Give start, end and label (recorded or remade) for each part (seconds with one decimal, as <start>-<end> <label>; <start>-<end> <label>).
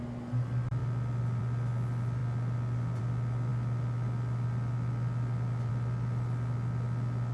0.0-7.3 recorded